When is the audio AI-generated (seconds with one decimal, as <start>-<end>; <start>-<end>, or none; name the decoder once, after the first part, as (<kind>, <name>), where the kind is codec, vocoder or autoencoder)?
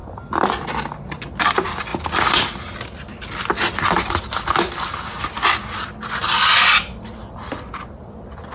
none